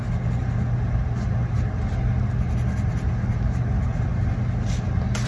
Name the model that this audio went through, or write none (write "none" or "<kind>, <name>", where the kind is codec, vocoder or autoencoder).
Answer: none